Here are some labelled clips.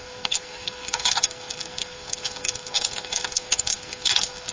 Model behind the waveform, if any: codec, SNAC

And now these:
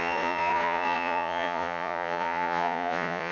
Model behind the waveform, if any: vocoder, Vocos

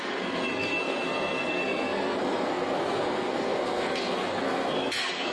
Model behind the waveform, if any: codec, SNAC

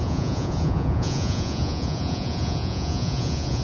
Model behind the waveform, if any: vocoder, Vocos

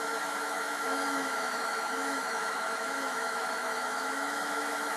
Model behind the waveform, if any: autoencoder, DAC-VAE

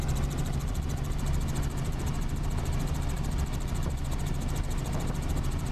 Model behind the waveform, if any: vocoder, BigVGAN v2